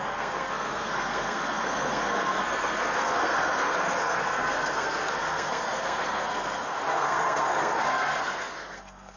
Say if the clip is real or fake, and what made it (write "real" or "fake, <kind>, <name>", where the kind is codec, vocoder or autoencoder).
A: fake, codec, SNAC